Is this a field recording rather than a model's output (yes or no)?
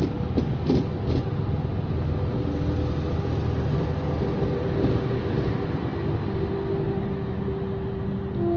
yes